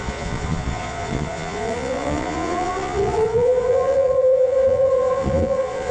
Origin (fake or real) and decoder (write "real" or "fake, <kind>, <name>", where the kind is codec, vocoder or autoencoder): fake, vocoder, Vocos